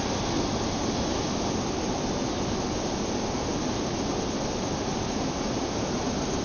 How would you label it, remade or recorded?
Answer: recorded